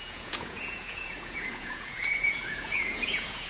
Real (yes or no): no